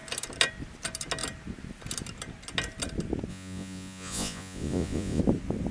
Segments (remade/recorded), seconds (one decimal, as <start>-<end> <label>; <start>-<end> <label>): 0.0-3.3 recorded; 3.3-5.2 remade; 5.2-5.7 recorded